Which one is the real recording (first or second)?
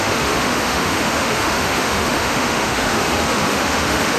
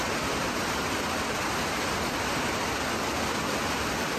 second